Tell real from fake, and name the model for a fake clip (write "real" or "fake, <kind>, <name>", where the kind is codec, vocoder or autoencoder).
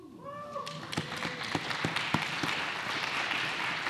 real